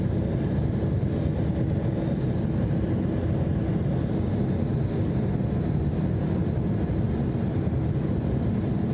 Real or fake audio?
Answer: real